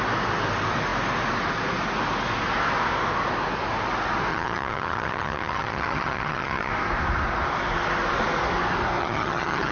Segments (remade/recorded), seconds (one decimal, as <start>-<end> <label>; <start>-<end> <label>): 0.0-4.3 recorded; 4.3-6.7 remade; 6.7-9.0 recorded; 9.0-9.7 remade

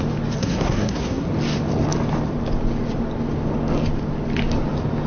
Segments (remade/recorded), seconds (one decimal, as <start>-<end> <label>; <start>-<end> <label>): 0.0-0.4 recorded; 0.4-1.3 remade; 1.3-5.1 recorded